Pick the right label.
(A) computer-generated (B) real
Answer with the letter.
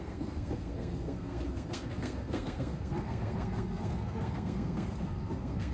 A